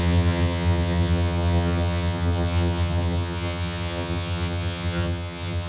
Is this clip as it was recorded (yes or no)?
no